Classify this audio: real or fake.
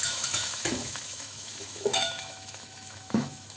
fake